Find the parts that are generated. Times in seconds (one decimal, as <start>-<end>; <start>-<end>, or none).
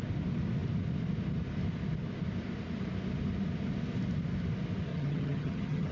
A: 4.9-5.9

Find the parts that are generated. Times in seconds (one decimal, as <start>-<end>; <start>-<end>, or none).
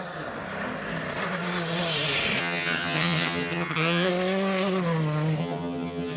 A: 2.4-4.1; 5.4-6.2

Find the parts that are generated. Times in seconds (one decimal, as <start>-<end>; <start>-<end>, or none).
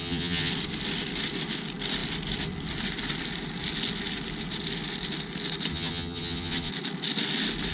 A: 0.0-0.5; 5.7-6.7